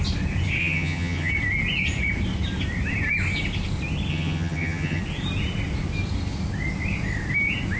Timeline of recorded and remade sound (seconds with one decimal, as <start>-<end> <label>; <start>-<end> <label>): 0.0-0.6 recorded; 0.6-1.3 remade; 1.3-4.1 recorded; 4.1-5.0 remade; 5.0-7.8 recorded